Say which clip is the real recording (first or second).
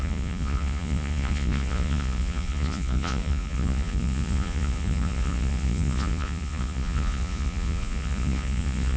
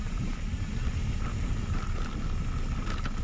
second